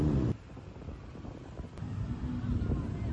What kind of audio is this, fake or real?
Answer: real